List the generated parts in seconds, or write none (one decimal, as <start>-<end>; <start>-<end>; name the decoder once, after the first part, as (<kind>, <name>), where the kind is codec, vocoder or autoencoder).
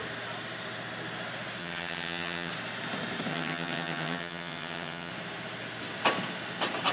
1.6-2.5 (vocoder, HiFi-GAN); 3.3-5.1